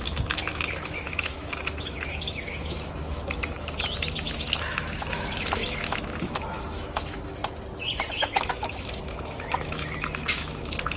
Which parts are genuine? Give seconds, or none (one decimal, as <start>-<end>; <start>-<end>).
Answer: 7.4-8.1